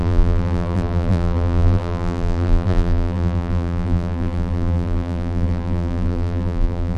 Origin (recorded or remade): remade